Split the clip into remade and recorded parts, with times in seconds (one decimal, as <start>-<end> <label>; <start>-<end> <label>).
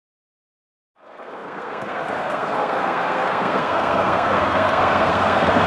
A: 0.0-5.7 remade